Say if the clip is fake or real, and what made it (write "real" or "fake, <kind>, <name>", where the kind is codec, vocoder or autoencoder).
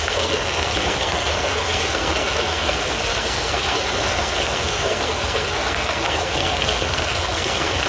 fake, codec, SNAC